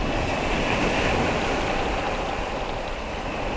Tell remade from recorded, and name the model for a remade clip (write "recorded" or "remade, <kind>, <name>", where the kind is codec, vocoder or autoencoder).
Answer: recorded